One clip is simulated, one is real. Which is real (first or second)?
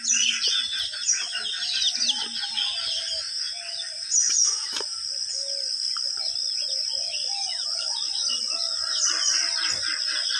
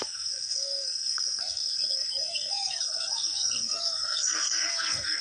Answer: first